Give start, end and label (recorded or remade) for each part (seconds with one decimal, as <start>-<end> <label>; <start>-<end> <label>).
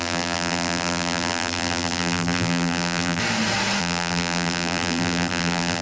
0.0-3.2 remade; 3.2-3.8 recorded; 3.8-5.8 remade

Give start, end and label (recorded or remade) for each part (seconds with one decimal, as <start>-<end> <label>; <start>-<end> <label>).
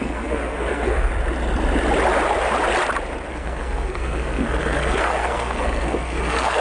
0.0-1.1 remade; 1.1-3.3 recorded; 3.3-6.6 remade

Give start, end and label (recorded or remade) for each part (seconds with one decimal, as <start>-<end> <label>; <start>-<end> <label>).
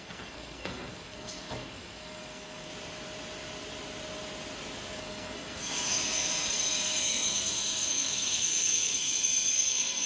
0.0-2.7 remade; 2.7-5.0 recorded; 5.0-10.1 remade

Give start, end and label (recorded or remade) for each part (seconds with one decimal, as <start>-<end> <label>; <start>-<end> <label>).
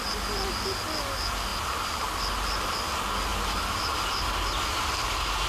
0.0-5.5 recorded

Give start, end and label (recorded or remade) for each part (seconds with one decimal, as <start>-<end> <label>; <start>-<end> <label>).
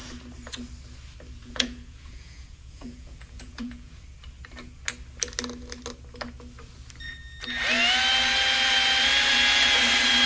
0.0-1.4 recorded; 1.4-4.0 remade; 4.0-10.3 recorded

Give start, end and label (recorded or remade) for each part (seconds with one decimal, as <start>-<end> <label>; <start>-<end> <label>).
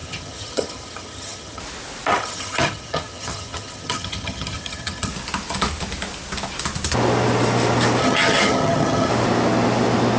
0.0-1.6 remade; 1.6-2.1 recorded; 2.1-5.1 remade; 5.1-8.0 recorded; 8.0-9.1 remade; 9.1-10.2 recorded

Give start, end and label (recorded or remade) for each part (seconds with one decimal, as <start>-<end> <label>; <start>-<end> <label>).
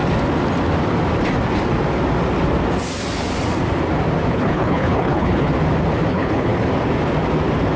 0.0-4.3 recorded; 4.3-5.5 remade; 5.5-6.1 recorded; 6.1-6.5 remade; 6.5-7.8 recorded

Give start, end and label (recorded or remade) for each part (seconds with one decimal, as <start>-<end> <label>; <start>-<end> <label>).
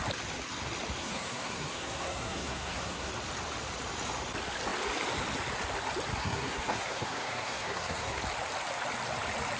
0.0-1.0 recorded; 1.0-3.1 remade; 3.1-6.2 recorded; 6.2-8.2 remade; 8.2-9.6 recorded